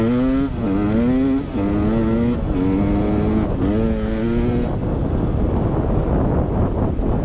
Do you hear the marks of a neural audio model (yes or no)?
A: no